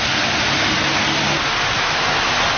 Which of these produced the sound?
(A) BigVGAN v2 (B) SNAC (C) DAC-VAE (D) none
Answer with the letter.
D